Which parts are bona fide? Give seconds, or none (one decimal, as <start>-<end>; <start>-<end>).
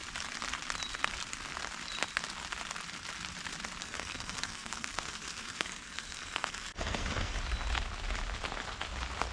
0.0-3.8; 7.4-9.3